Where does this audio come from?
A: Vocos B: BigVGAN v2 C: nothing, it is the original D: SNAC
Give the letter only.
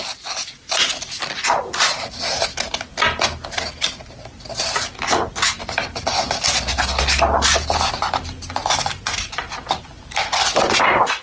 C